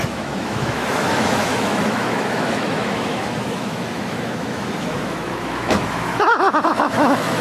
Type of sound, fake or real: fake